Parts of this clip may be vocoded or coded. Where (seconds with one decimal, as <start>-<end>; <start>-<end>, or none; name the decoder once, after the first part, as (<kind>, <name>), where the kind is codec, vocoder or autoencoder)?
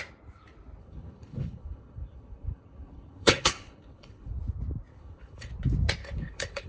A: 0.8-4.3 (codec, HILCodec); 4.9-5.5; 6.0-6.7